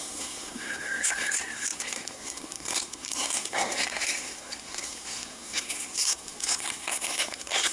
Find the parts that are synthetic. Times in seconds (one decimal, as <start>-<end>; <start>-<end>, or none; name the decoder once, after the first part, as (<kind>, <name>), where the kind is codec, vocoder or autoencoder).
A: 0.0-7.7 (codec, SNAC)